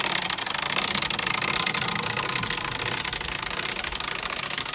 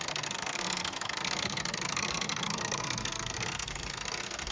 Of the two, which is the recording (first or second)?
first